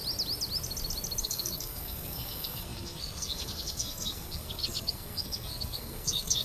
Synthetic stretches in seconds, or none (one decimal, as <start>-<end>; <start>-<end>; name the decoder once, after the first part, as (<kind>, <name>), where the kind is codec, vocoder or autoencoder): 1.2-6.4 (codec, SNAC)